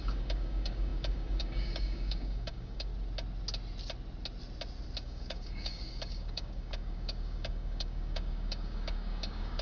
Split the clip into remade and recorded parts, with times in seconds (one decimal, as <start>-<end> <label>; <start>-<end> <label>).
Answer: 0.0-2.9 remade; 2.9-5.0 recorded; 5.0-9.6 remade